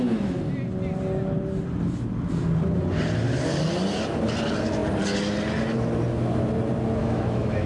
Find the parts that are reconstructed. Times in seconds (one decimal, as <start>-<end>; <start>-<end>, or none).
7.0-7.7